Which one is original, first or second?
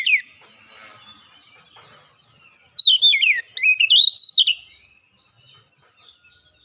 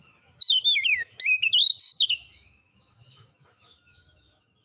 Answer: first